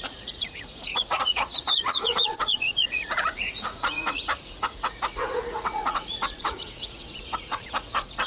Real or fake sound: fake